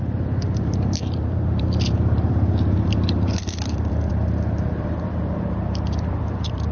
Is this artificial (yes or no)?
yes